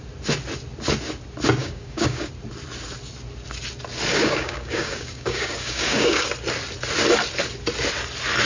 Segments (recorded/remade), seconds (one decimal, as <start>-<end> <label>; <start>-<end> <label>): 0.0-1.6 recorded; 1.6-2.3 remade; 2.3-4.1 recorded; 4.1-6.3 remade; 6.3-8.5 recorded